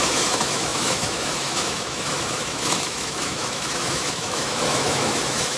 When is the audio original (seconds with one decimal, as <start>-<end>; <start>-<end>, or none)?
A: none